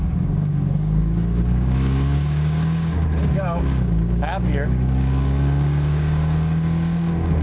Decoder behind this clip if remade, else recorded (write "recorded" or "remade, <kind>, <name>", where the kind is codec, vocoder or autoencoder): remade, codec, DAC